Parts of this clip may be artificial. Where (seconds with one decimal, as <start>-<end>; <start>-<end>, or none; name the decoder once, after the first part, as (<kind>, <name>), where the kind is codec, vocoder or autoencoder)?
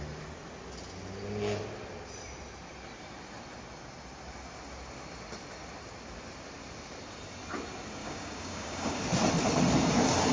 8.0-9.0 (codec, DAC)